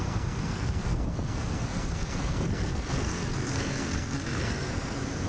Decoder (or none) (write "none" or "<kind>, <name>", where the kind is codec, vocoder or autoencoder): codec, SNAC